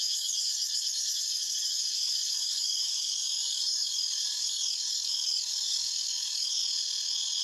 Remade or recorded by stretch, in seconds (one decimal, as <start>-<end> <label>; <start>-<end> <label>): 0.0-6.6 remade; 6.6-7.4 recorded